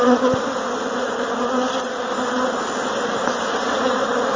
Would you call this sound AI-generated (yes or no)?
no